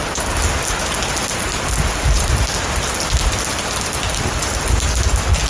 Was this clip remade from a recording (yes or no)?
no